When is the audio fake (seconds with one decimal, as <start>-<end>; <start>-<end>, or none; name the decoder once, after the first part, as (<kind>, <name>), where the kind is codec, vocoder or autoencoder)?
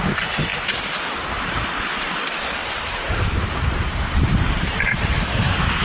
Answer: 2.6-5.3 (vocoder, BigVGAN v2)